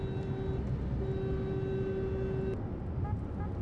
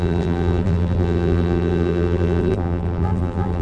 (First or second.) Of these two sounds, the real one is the first